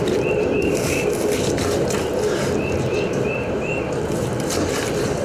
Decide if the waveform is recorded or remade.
remade